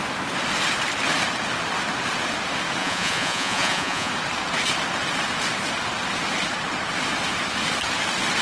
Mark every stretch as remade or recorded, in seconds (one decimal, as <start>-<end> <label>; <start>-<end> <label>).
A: 0.0-2.8 recorded; 2.8-4.1 remade; 4.1-8.4 recorded